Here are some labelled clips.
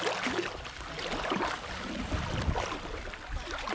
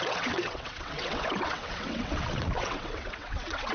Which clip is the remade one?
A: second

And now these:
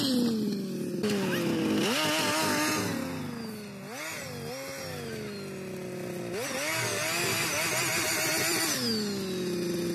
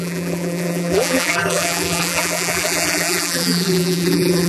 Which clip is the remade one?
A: second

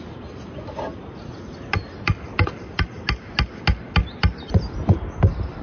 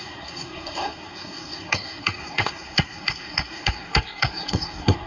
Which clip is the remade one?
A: second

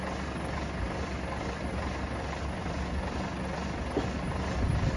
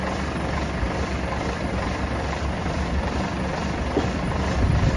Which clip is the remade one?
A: second